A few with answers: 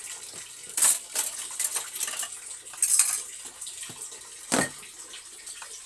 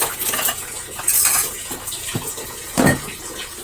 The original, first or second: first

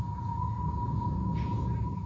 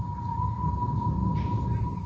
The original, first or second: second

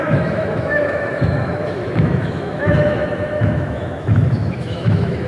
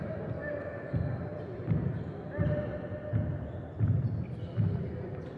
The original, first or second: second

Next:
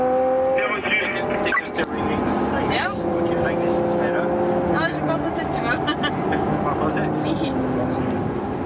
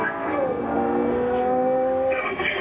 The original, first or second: first